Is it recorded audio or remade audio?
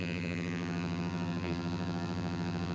remade